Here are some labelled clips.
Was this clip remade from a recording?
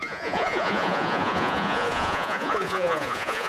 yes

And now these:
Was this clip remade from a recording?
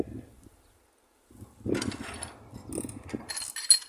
no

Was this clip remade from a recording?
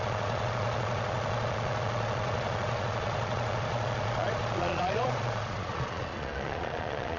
yes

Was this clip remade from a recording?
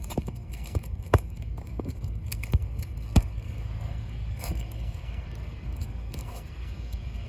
yes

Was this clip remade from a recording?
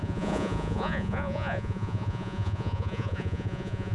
yes